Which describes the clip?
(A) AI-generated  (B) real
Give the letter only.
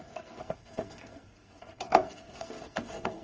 A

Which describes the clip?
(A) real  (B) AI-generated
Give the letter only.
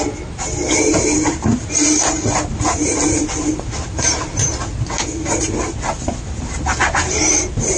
A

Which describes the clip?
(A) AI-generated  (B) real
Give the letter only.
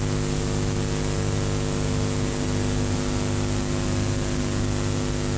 B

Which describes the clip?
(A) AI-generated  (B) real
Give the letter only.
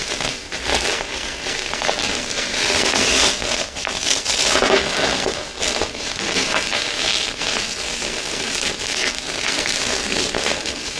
A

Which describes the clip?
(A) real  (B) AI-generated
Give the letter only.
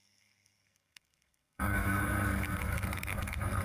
B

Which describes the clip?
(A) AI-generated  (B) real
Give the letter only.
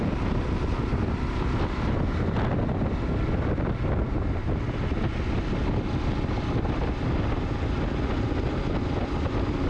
B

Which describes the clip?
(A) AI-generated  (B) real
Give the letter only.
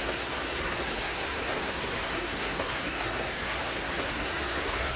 A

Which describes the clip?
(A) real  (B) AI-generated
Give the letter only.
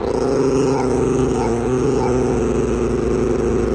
A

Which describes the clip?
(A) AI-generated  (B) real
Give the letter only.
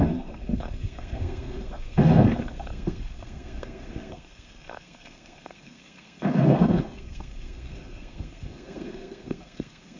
A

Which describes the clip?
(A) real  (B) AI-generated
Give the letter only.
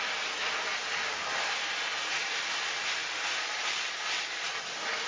A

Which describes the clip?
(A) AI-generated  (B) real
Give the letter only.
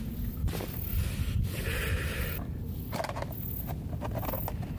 B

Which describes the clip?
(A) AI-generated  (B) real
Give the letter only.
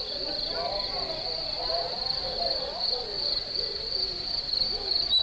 B